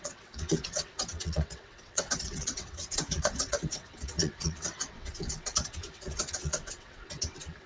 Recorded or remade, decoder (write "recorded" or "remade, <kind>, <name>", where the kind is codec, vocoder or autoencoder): remade, vocoder, WaveNeXt